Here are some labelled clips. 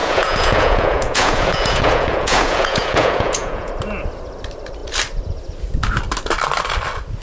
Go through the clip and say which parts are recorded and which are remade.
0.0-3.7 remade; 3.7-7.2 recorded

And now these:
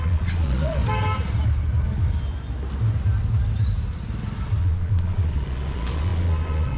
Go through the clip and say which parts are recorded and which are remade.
0.0-0.8 remade; 0.8-4.6 recorded; 4.6-6.8 remade

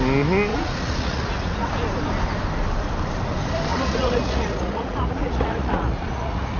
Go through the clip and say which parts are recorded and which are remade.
0.0-0.5 recorded; 0.5-1.7 remade; 1.7-3.7 recorded; 3.7-6.6 remade

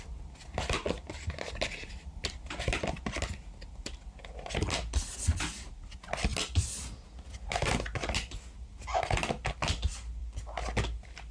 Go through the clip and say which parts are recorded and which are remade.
0.0-11.3 recorded